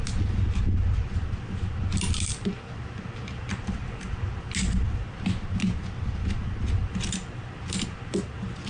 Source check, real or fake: real